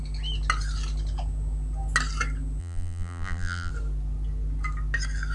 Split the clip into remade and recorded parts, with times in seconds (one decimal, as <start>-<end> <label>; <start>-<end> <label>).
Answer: 0.0-2.6 recorded; 2.6-3.7 remade; 3.7-5.3 recorded